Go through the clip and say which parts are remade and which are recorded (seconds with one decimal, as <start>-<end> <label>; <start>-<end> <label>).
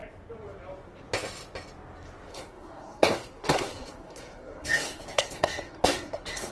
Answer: 0.0-2.3 recorded; 2.3-6.5 remade